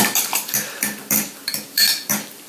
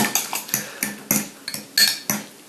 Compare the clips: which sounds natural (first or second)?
second